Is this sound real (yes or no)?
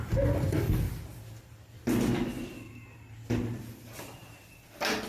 yes